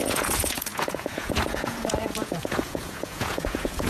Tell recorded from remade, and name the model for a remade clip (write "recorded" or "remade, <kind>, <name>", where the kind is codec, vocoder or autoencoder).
remade, vocoder, Vocos